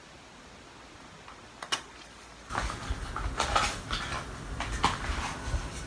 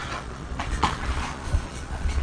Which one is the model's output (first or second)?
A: second